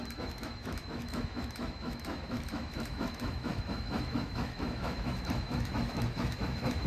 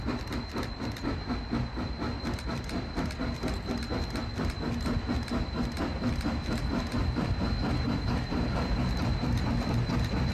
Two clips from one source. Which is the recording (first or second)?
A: second